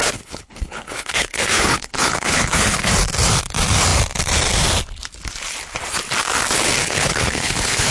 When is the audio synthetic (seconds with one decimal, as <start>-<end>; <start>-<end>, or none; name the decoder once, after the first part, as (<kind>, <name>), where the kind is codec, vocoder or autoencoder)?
0.0-2.9 (codec, HILCodec); 6.8-7.9